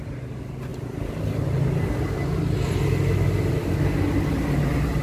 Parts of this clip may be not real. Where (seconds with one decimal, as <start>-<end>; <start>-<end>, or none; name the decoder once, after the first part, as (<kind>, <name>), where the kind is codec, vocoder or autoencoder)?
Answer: 0.7-1.2 (vocoder, BigVGAN v2)